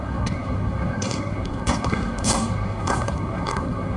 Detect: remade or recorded remade